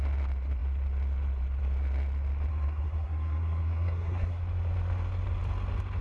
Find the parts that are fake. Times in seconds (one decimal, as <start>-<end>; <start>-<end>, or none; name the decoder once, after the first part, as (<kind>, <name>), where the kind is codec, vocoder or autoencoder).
2.5-4.4 (codec, SNAC)